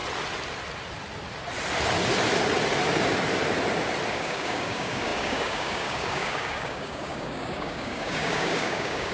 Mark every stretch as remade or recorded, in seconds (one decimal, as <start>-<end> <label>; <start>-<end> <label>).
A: 0.0-4.1 recorded; 4.1-9.1 remade